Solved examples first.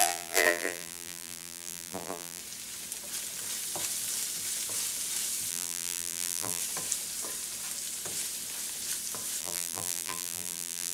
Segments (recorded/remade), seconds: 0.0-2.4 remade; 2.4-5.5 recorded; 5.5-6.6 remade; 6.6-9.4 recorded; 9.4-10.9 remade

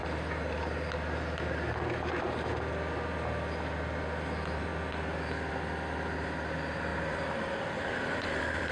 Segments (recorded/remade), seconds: 0.0-6.9 recorded; 6.9-8.7 remade

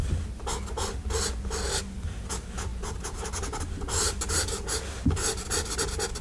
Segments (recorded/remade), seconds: 0.0-6.2 recorded

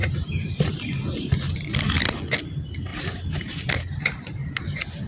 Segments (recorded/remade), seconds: 0.0-0.7 remade; 0.7-2.9 recorded; 2.9-5.1 remade

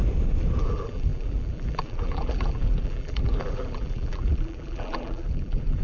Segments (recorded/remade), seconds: 0.0-0.6 recorded; 0.6-5.8 remade

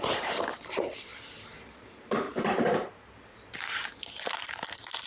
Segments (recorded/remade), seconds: 0.0-5.1 remade